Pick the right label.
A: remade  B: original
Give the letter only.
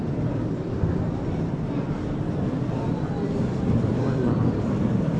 A